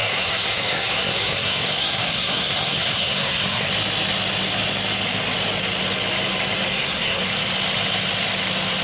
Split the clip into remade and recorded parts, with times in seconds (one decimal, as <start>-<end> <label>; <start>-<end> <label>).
0.0-3.7 remade; 3.7-6.7 recorded; 6.7-7.3 remade; 7.3-8.8 recorded